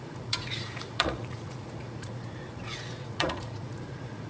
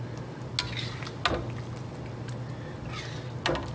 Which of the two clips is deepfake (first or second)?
first